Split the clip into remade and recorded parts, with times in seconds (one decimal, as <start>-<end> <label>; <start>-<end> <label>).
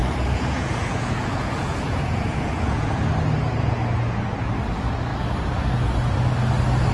0.0-3.0 remade; 3.0-6.9 recorded